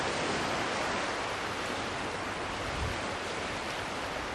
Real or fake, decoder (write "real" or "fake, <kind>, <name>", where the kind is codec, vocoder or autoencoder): real